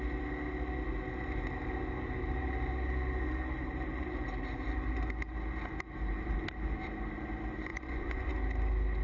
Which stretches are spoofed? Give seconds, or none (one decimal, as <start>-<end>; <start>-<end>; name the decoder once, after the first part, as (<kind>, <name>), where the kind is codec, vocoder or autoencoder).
7.7-8.3 (vocoder, Vocos)